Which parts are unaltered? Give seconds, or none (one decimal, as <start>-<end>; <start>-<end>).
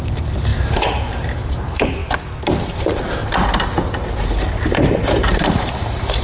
2.0-2.8; 3.2-4.2